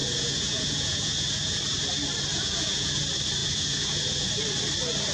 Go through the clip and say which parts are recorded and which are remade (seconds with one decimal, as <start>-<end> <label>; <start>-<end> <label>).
0.0-1.6 remade; 1.6-2.3 recorded; 2.3-3.0 remade; 3.0-3.4 recorded; 3.4-4.3 remade; 4.3-5.1 recorded